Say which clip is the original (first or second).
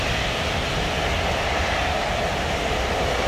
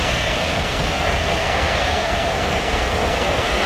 first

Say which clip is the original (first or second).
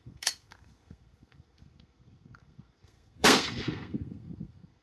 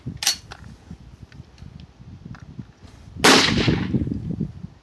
second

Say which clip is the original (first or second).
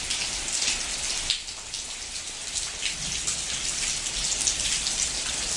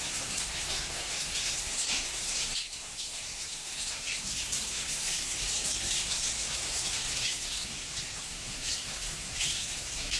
first